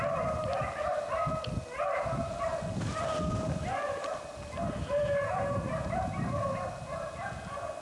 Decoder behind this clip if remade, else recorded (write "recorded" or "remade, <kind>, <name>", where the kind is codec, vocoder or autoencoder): recorded